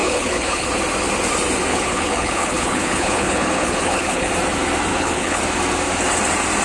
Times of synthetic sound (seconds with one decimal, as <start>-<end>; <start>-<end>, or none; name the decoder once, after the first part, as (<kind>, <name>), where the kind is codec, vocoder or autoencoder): 0.0-0.7 (codec, HILCodec); 1.7-4.3; 4.9-5.4